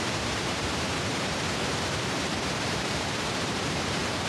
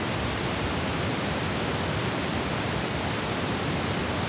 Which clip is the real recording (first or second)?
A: second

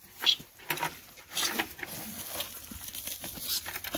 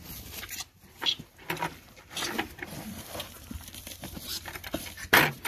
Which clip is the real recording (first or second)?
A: first